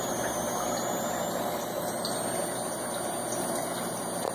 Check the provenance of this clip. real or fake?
real